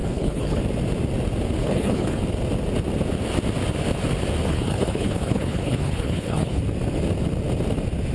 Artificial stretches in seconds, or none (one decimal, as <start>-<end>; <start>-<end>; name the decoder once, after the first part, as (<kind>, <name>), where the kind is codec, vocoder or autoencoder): 0.0-0.6 (codec, HILCodec); 1.6-2.2; 4.5-6.6